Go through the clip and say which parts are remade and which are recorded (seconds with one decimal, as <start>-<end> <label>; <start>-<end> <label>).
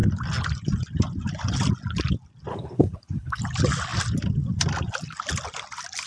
0.0-2.5 recorded; 2.5-3.4 remade; 3.4-6.1 recorded